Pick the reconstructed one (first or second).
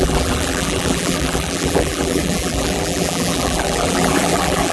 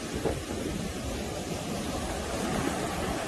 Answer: first